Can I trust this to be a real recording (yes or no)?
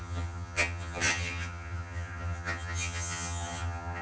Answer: no